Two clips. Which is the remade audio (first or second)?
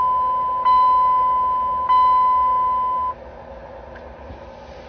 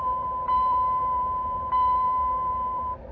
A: second